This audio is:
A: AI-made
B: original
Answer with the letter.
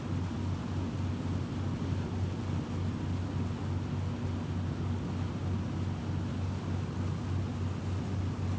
B